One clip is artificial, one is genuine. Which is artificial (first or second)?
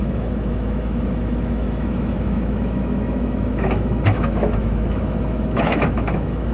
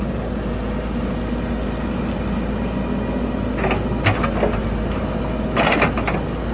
first